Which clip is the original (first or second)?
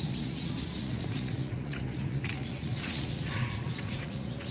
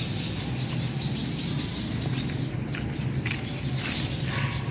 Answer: second